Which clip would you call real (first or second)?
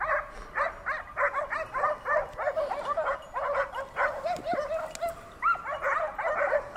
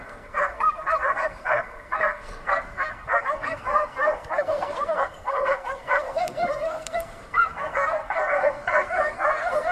first